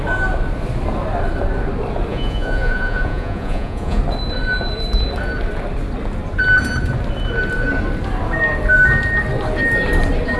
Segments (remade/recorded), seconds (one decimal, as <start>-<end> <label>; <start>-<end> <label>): 0.0-2.1 recorded; 2.1-4.0 remade; 4.0-10.4 recorded